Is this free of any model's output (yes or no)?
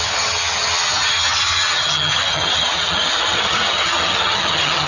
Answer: no